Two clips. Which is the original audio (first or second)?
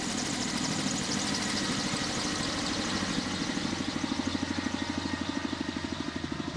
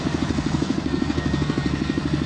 first